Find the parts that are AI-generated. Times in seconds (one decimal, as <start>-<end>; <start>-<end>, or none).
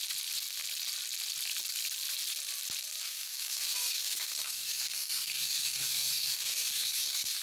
3.0-7.4